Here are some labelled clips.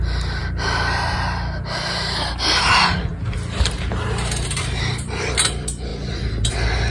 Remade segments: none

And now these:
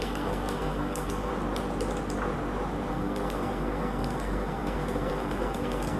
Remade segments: 0.0-1.3; 2.9-6.0

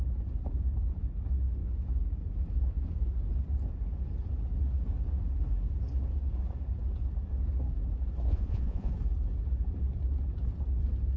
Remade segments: 8.3-8.9

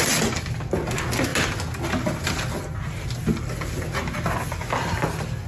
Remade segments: none

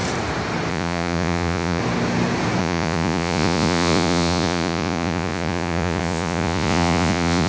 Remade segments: 0.7-1.8; 2.6-7.5

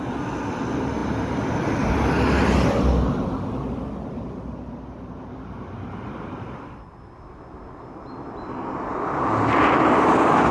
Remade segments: none

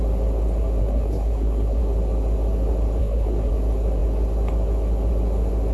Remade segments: 0.8-1.8; 3.0-3.5